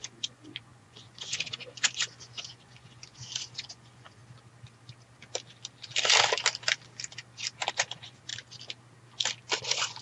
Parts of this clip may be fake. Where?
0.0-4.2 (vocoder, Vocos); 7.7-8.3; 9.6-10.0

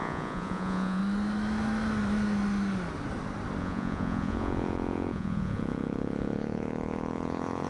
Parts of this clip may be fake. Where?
0.0-1.0 (vocoder, Vocos); 3.6-7.7